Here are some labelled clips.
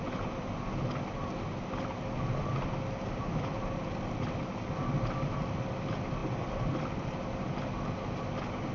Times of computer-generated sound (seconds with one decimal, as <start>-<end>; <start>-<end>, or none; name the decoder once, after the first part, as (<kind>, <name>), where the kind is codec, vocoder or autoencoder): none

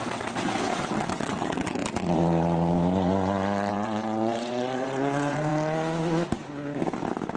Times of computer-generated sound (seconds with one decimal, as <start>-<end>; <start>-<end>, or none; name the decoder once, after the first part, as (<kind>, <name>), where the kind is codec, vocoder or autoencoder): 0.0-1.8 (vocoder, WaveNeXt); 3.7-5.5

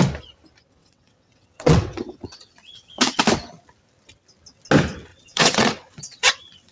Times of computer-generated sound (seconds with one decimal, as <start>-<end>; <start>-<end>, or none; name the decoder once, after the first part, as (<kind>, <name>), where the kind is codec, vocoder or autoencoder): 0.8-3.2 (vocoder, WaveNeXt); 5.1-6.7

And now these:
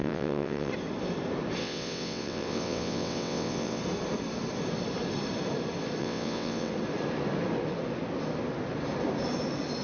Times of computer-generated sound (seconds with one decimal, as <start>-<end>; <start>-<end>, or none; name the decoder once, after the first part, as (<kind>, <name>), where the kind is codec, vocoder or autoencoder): 0.0-0.7 (vocoder, WaveNeXt); 1.6-3.8; 6.0-6.7

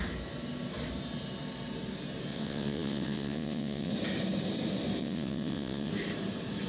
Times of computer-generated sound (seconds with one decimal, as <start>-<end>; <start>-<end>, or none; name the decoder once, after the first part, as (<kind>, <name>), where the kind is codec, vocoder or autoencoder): 2.3-3.9 (vocoder, WaveNeXt); 5.0-5.9

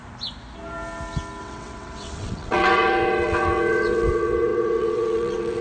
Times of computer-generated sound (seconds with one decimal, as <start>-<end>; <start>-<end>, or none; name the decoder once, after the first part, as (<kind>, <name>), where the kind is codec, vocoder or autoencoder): 1.4-5.6 (vocoder, WaveNeXt)